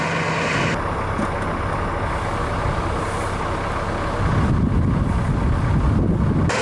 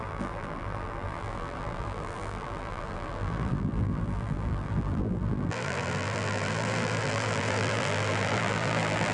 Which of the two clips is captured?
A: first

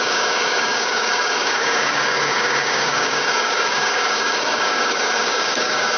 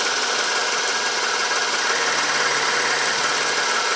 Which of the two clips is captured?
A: second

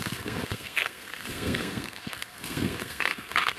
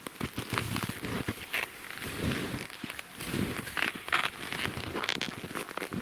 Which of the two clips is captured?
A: second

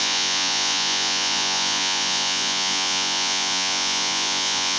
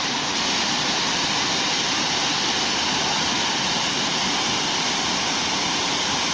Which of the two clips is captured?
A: second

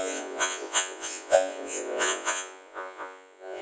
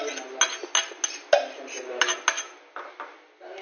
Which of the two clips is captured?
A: second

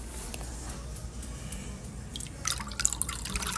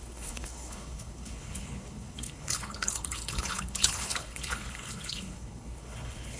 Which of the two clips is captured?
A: first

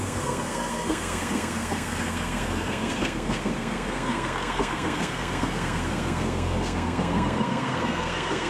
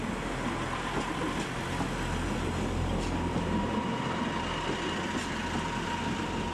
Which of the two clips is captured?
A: second